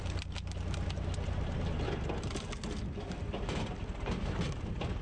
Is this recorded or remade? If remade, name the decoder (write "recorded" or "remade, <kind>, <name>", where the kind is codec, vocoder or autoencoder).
recorded